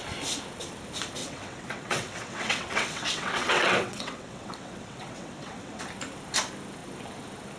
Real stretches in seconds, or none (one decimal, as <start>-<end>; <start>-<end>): 0.0-1.2; 5.8-7.6